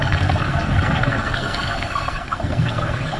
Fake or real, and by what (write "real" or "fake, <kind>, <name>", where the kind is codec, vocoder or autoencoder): fake, codec, SNAC